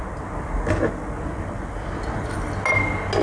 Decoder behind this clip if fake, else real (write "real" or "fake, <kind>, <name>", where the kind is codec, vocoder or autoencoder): real